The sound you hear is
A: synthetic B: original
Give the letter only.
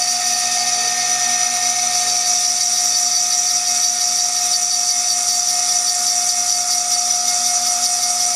B